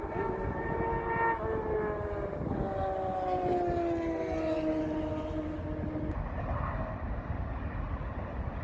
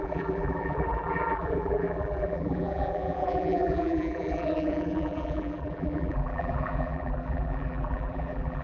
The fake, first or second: second